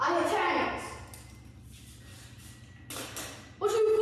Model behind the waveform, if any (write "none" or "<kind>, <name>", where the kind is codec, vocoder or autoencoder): none